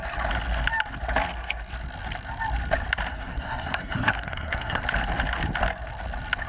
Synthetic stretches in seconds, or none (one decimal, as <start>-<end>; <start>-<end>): 3.1-4.8